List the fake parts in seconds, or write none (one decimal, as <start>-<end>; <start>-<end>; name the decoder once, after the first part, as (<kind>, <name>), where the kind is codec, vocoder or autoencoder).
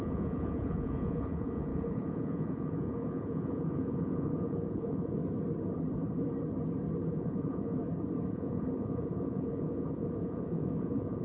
0.0-5.2 (vocoder, Vocos); 7.1-7.8; 8.3-11.2